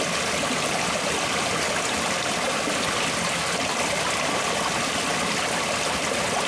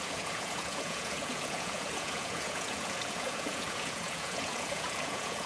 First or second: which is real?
first